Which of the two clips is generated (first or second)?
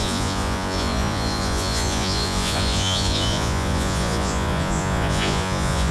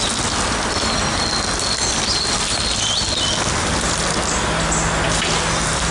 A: first